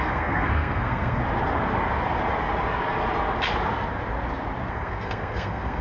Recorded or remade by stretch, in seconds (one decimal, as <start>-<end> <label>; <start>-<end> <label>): 0.0-1.2 remade; 1.2-4.7 recorded; 4.7-5.8 remade